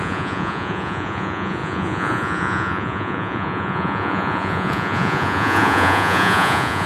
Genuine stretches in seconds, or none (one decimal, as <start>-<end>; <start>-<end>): none